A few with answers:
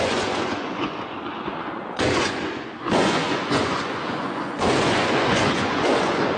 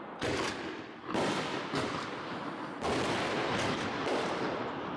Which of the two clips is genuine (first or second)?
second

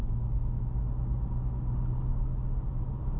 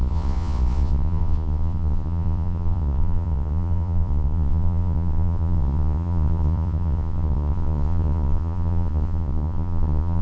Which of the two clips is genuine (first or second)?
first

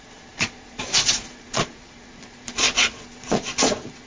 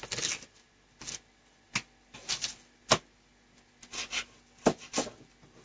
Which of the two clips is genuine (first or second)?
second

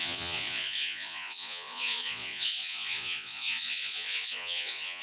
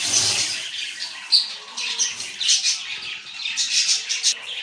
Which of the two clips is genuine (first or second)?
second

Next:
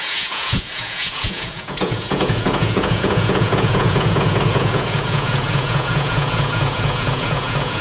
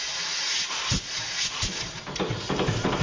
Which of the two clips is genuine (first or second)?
second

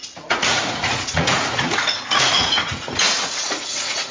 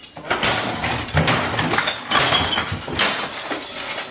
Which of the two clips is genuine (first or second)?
second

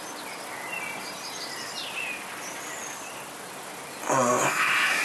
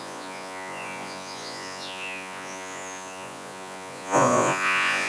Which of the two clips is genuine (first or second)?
first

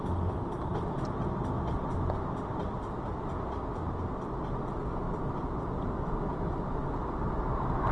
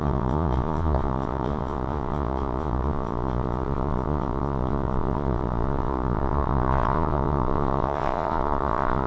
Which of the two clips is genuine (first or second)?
first